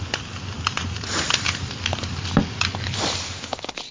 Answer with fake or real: real